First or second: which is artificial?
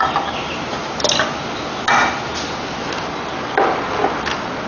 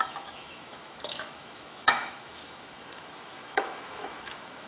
second